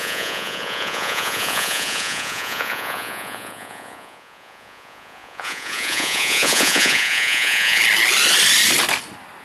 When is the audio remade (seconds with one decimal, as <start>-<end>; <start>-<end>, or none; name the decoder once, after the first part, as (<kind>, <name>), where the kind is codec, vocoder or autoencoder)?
0.0-7.8 (vocoder, Vocos)